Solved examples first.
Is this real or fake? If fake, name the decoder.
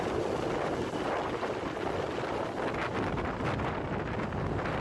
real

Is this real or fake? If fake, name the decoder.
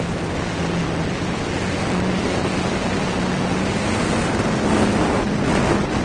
real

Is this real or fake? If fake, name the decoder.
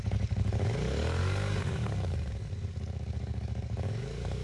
fake, codec, DAC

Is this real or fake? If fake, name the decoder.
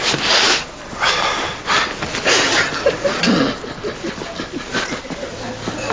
real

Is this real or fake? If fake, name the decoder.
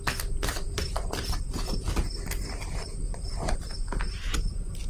real